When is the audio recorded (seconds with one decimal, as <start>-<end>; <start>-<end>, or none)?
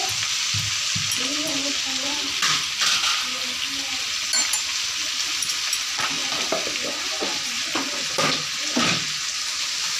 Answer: 0.0-10.0